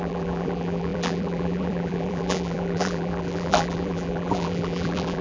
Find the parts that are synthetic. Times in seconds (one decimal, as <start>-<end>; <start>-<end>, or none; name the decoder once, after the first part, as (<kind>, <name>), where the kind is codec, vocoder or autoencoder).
0.0-5.2 (vocoder, BigVGAN v2)